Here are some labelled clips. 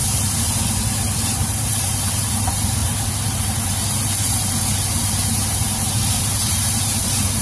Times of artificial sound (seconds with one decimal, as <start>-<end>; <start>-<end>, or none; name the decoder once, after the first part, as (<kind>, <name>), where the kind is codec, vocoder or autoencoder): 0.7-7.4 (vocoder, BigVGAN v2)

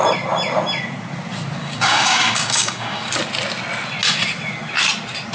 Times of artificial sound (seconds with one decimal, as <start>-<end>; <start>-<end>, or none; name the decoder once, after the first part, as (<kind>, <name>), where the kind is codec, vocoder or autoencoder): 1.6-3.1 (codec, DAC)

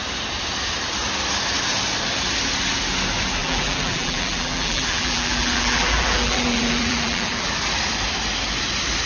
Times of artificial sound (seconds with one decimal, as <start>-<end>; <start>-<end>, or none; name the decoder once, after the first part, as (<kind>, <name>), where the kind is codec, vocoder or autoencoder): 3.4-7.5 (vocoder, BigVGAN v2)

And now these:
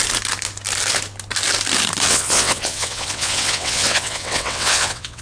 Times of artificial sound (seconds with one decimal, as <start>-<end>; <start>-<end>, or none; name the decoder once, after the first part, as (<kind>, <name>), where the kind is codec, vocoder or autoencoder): 2.1-5.2 (vocoder, WaveNeXt)

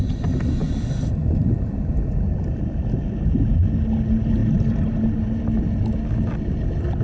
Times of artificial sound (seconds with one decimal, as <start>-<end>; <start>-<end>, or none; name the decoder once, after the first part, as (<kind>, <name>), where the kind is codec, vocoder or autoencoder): none

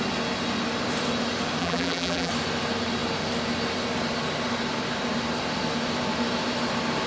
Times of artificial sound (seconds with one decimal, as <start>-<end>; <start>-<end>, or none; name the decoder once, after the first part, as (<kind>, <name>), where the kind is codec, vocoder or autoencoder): 1.6-2.3 (vocoder, BigVGAN v2)

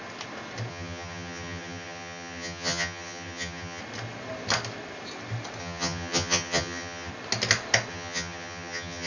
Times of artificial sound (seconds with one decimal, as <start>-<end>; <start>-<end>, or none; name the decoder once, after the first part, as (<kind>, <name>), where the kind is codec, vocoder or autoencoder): 0.7-3.8 (vocoder, HiFi-GAN); 5.6-7.1; 7.9-9.1

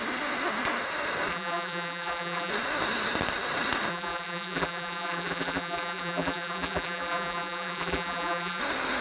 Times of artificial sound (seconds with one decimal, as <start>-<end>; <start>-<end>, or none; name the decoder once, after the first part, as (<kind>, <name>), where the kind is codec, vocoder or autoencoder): 1.3-2.5 (vocoder, BigVGAN v2); 3.9-8.6